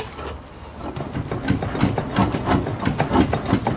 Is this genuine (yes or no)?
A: yes